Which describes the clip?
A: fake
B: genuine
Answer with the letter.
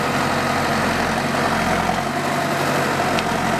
B